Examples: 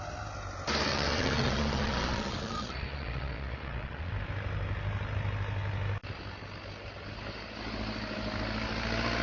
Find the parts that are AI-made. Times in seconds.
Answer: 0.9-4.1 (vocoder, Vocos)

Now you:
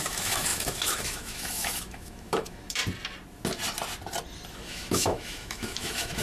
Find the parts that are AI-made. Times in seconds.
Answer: 0.0-2.8 (autoencoder, DAC-VAE); 4.5-6.2

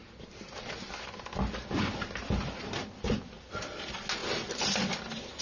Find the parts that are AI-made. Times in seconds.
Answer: none